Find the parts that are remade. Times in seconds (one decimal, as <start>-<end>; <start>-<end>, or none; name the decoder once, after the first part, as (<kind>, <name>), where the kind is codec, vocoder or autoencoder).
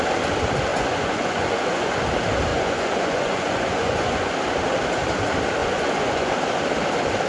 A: 0.7-2.0 (vocoder, Vocos); 2.5-4.3; 5.6-6.3